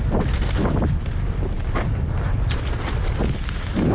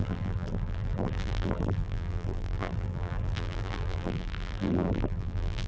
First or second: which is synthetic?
second